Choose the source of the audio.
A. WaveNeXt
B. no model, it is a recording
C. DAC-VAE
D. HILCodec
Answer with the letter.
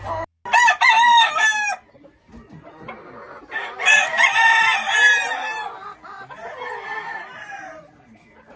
B